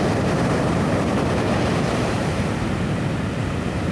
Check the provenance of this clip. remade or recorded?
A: remade